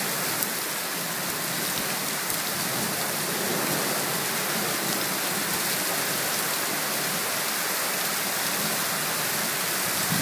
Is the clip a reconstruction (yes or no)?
no